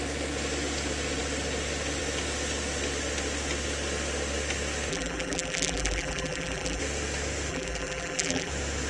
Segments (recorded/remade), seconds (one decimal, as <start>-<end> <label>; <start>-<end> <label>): 0.0-4.9 recorded; 4.9-6.8 remade; 6.8-7.5 recorded; 7.5-8.5 remade; 8.5-8.9 recorded